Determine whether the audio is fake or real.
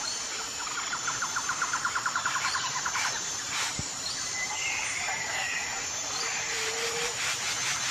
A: fake